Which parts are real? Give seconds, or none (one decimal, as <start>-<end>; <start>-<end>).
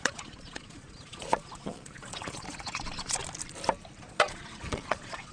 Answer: 3.2-4.0